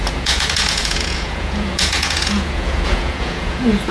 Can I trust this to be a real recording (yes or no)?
no